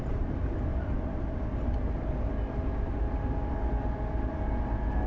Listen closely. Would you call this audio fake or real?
real